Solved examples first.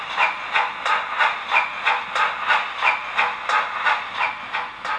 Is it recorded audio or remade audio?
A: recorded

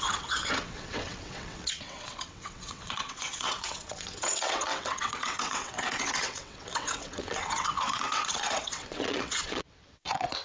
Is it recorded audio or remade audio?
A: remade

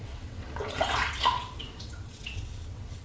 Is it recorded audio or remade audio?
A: remade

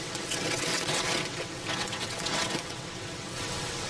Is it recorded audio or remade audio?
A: remade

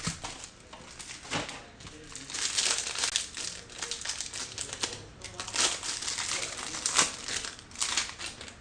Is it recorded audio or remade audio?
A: recorded